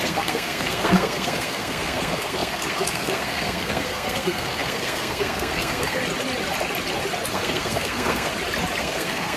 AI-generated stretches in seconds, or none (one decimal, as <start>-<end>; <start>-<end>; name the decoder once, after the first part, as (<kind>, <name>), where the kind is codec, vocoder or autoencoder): 0.0-6.0 (codec, SNAC); 7.3-8.3; 8.8-9.4